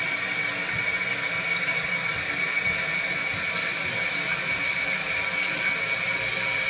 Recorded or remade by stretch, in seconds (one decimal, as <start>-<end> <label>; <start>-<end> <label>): 0.0-6.7 recorded